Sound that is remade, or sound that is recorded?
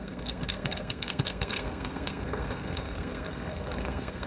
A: remade